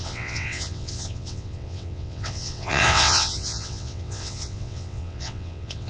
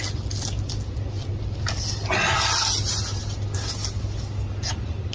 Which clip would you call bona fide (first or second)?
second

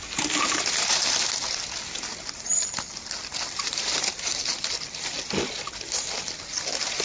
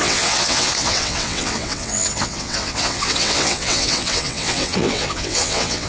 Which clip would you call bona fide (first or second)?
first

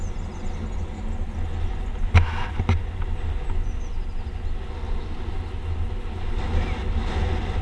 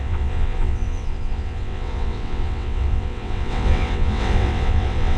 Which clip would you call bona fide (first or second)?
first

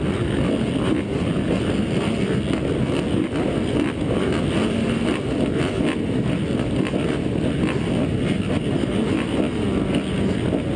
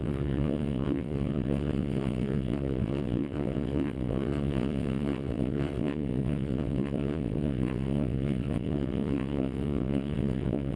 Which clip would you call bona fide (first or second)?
first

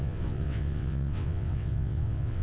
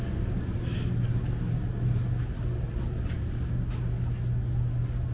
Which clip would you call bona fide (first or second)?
second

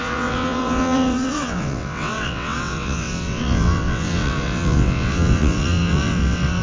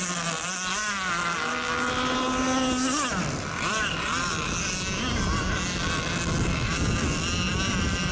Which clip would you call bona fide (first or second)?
second